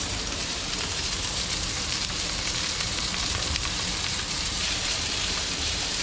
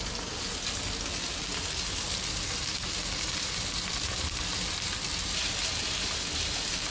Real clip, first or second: second